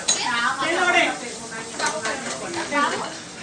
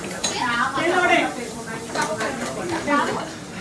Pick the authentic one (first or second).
first